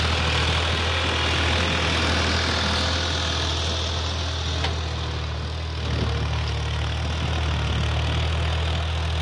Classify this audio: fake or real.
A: real